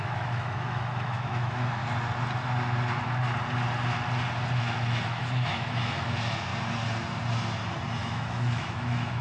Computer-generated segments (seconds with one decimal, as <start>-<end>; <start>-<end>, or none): 0.0-1.8; 4.6-6.5; 8.0-9.2